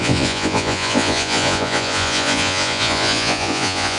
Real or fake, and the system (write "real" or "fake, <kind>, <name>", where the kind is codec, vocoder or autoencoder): fake, vocoder, Vocos